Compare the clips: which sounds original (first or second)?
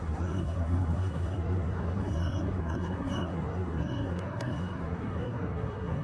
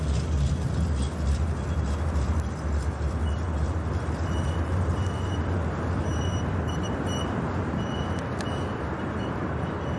second